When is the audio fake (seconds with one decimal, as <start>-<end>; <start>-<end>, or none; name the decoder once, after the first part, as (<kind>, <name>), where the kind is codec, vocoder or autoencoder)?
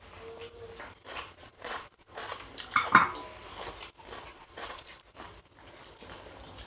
1.1-2.3 (vocoder, Vocos); 4.3-5.0